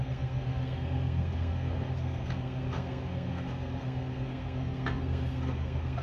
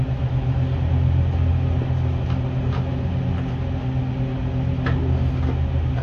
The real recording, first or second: second